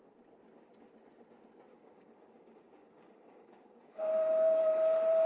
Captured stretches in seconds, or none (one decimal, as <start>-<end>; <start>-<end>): 0.0-1.7; 4.6-5.3